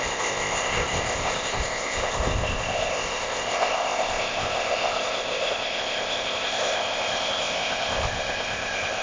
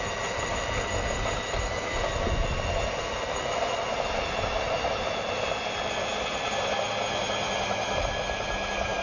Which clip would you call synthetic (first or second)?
first